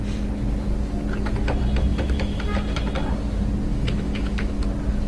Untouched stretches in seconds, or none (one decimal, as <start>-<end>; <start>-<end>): 0.0-1.9; 2.4-3.7; 4.5-5.1